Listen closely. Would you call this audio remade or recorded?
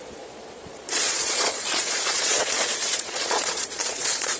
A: remade